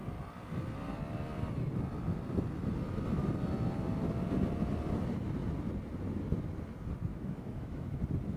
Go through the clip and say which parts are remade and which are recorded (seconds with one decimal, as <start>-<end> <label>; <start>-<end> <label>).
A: 0.0-7.1 recorded; 7.1-8.0 remade; 8.0-8.4 recorded